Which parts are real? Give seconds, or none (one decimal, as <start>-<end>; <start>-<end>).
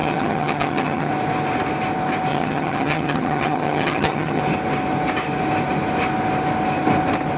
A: 1.1-2.3; 4.4-7.4